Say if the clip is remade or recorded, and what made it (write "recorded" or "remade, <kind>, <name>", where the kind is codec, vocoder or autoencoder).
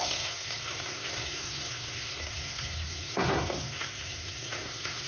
remade, codec, SNAC